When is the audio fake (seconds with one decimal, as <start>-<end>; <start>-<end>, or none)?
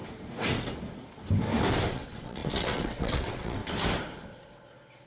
1.9-3.6